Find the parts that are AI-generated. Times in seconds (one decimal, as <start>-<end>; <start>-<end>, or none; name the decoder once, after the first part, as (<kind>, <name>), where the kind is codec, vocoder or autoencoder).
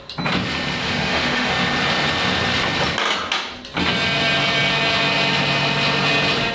0.8-1.5 (autoencoder, DAC-VAE)